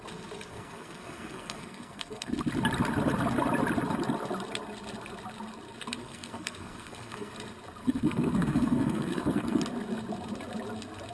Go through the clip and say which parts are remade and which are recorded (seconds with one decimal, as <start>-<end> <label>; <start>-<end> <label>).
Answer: 0.0-0.5 recorded; 0.5-2.3 remade; 2.3-6.0 recorded; 6.0-7.3 remade; 7.3-7.8 recorded; 7.8-9.6 remade; 9.6-11.1 recorded